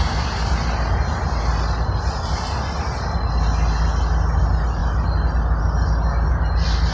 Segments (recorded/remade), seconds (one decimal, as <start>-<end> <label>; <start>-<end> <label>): 0.0-6.9 recorded